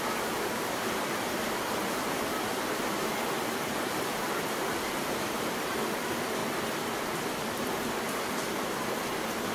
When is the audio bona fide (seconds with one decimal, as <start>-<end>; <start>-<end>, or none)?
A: none